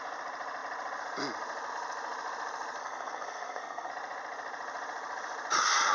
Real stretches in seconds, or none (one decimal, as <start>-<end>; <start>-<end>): 0.0-2.8; 3.9-5.9